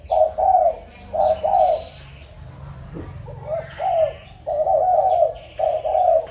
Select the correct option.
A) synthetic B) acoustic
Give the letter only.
B